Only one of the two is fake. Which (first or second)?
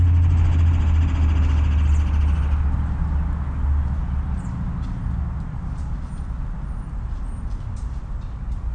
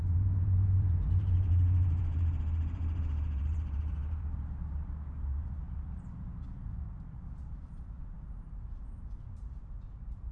second